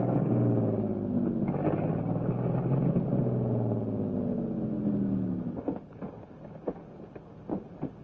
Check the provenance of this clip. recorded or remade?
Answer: recorded